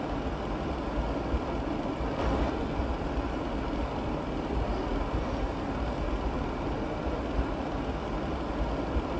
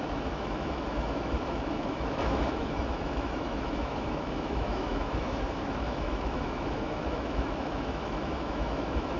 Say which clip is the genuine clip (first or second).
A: first